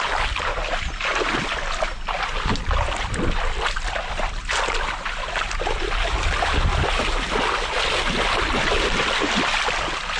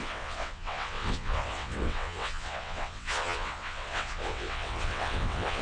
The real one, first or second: first